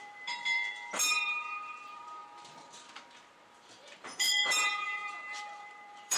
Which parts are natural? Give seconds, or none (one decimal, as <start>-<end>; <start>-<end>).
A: 2.2-3.5